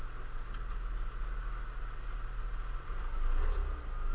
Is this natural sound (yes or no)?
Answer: yes